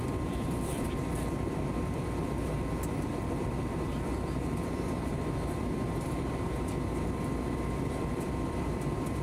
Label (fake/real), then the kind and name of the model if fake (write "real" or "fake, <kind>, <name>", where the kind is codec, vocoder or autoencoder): fake, vocoder, BigVGAN v2